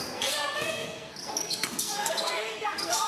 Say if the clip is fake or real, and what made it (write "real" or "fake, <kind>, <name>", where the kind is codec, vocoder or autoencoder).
fake, codec, SNAC